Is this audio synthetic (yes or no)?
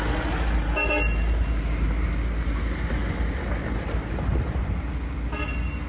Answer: no